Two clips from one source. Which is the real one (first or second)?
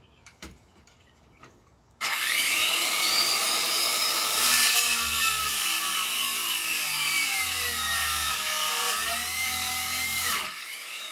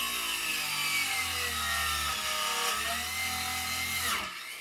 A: second